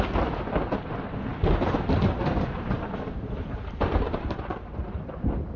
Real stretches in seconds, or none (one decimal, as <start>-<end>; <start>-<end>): 0.0-1.3; 4.7-5.6